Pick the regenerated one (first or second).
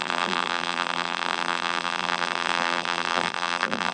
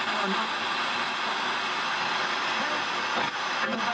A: first